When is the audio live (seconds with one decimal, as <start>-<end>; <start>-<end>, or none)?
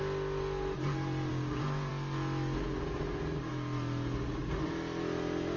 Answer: 0.0-1.3; 1.9-5.6